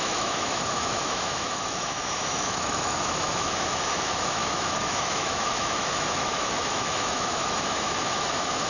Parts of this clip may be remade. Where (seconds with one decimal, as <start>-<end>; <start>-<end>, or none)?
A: 0.0-8.7